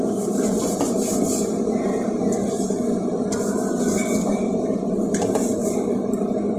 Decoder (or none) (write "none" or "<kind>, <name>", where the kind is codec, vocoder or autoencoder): none